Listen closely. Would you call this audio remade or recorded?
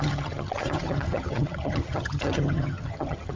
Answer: remade